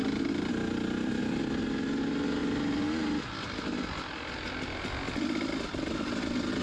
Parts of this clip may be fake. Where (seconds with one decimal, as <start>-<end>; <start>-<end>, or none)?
none